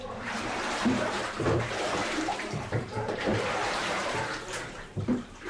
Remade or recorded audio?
remade